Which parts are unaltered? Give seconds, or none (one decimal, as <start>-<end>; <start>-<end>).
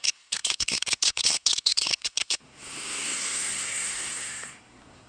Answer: none